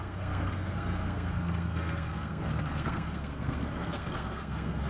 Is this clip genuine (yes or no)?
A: no